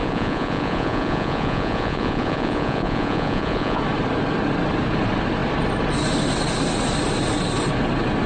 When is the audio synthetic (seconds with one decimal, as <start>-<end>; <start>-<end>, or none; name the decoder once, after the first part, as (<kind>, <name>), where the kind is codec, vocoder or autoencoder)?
0.0-3.8 (vocoder, Vocos)